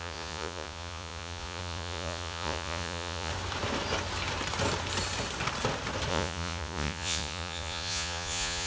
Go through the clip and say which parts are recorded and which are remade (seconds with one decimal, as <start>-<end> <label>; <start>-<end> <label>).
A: 0.0-3.3 remade; 3.3-6.1 recorded; 6.1-8.7 remade